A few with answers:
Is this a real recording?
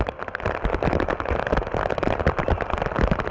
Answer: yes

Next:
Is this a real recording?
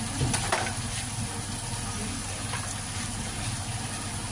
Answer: yes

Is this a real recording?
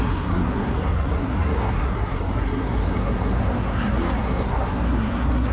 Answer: no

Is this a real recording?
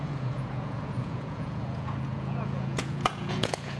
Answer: no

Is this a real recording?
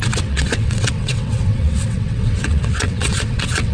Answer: no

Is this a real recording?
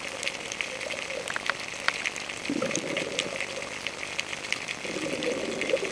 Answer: yes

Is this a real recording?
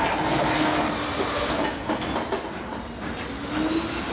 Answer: yes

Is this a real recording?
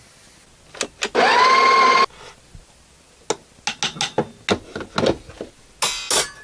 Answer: yes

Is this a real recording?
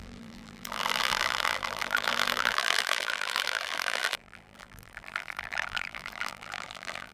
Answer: no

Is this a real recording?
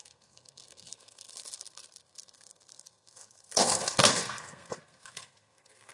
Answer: no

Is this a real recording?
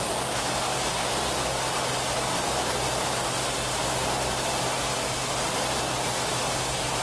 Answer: yes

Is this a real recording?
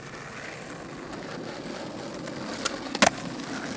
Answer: yes